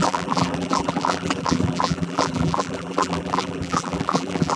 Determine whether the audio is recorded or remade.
remade